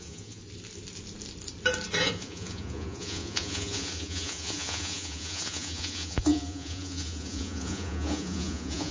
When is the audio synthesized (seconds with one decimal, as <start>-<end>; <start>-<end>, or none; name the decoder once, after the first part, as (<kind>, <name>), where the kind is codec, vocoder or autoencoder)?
0.0-0.4 (vocoder, Vocos); 2.0-8.9